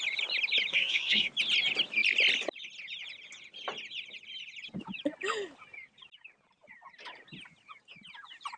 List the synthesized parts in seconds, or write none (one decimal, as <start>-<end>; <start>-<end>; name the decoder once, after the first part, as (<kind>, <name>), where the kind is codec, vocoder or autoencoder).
0.7-1.3 (codec, SNAC)